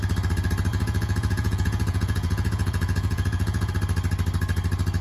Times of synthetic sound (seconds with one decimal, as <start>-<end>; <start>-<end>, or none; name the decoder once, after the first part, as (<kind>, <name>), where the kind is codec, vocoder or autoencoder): 0.7-3.7 (vocoder, Vocos)